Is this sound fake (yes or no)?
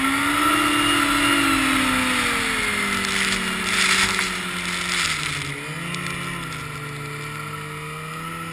no